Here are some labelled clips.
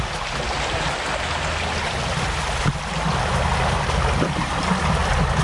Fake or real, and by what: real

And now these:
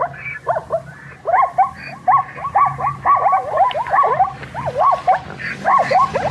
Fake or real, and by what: real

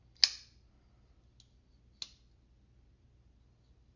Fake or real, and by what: real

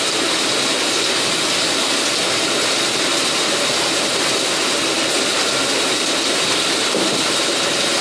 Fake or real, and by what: real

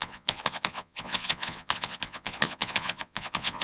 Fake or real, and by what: fake, vocoder, Vocos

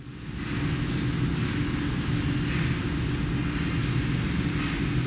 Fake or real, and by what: real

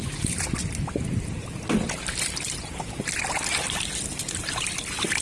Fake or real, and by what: real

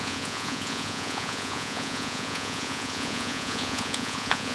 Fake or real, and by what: fake, vocoder, Vocos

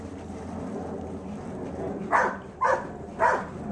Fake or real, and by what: real